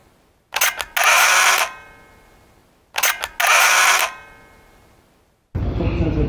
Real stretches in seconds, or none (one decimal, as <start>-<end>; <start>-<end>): 0.0-6.3